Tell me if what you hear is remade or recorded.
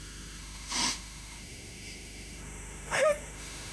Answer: remade